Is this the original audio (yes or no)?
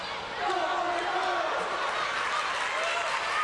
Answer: yes